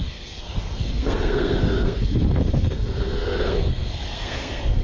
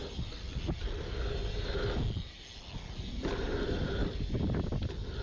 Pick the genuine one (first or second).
second